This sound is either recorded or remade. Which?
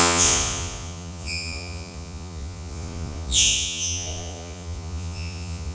remade